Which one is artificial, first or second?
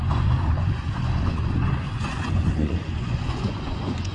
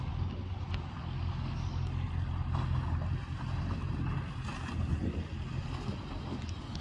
first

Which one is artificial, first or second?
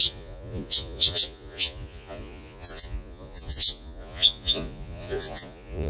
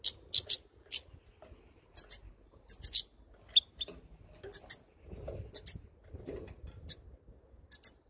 first